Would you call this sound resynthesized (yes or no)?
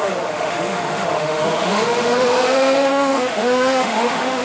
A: yes